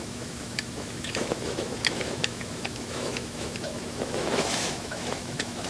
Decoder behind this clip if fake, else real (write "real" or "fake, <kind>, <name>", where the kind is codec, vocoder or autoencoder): fake, autoencoder, DAC-VAE